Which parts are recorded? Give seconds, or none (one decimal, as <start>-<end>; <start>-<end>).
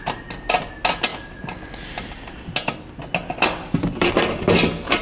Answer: 0.0-5.0